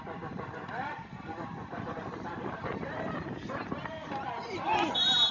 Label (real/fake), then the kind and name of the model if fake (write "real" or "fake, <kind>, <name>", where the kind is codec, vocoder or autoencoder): fake, vocoder, BigVGAN v2